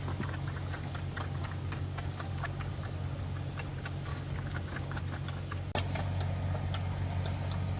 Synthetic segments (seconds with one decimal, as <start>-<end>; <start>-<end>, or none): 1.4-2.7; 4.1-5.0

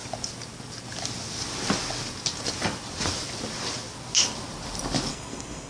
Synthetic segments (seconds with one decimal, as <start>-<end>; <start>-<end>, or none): 5.1-5.7

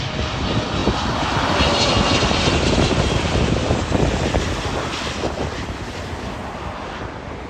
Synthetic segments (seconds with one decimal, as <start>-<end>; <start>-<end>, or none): none

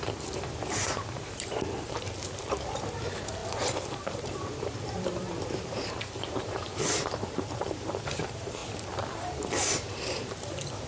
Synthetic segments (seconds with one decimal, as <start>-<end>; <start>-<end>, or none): 0.0-8.6; 9.2-10.9

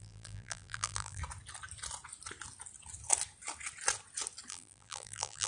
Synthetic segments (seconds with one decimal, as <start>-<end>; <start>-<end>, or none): 0.0-1.2; 4.5-5.5

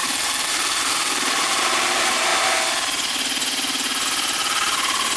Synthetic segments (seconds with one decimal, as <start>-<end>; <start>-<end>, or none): 0.0-2.3